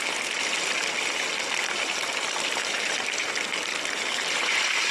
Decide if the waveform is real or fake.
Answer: fake